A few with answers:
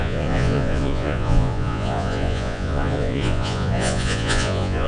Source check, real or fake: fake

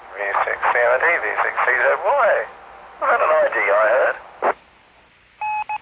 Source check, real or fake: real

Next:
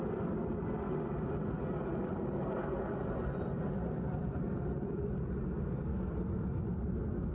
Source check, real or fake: real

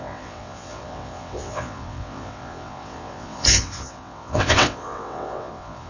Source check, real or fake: fake